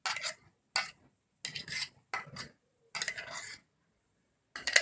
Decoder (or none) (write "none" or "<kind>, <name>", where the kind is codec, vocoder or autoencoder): none